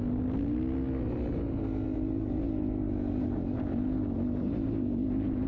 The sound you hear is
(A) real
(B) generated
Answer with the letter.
A